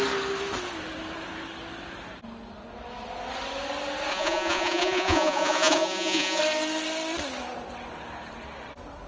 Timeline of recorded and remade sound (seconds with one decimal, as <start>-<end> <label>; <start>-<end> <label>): 0.0-4.1 recorded; 4.1-6.4 remade; 6.4-9.1 recorded